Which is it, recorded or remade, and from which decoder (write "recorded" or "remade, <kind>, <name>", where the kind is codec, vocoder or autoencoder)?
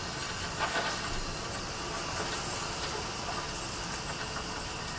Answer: recorded